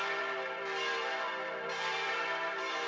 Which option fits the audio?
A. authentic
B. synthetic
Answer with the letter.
B